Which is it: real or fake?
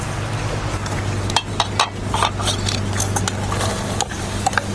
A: real